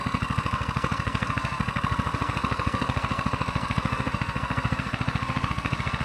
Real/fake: fake